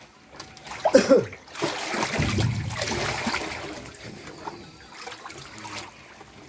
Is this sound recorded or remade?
recorded